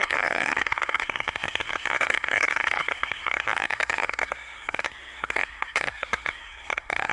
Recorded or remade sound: remade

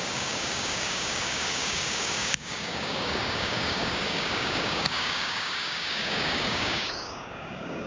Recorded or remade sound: remade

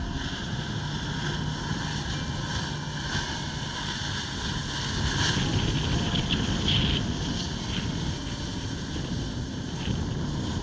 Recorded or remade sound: recorded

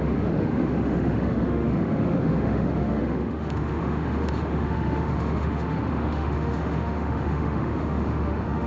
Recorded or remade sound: remade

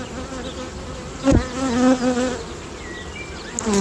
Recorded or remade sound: recorded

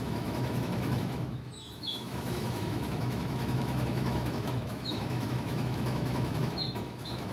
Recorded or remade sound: remade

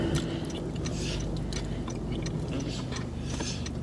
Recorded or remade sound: recorded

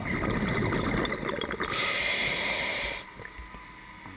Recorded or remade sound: recorded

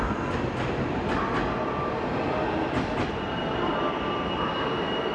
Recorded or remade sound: recorded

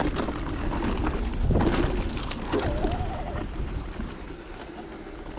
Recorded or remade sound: recorded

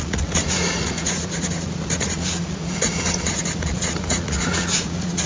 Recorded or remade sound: remade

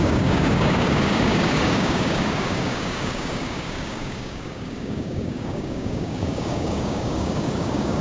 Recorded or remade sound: remade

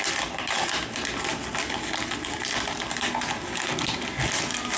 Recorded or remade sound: recorded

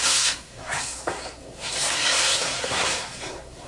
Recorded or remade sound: remade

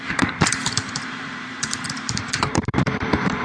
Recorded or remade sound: remade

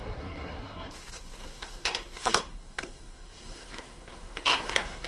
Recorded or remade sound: remade